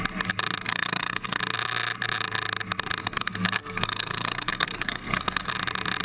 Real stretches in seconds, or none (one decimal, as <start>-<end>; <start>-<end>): 0.0-0.6; 1.4-3.0; 5.5-6.0